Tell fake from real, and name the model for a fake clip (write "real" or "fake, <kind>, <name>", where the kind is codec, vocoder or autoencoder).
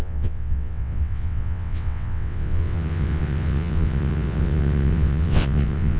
fake, vocoder, WaveNeXt